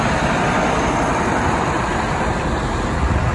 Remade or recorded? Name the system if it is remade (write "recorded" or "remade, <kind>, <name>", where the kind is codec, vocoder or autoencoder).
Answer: recorded